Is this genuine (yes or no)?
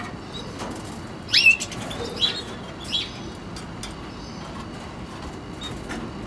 yes